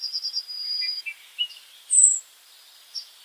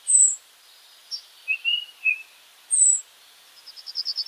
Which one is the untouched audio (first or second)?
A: second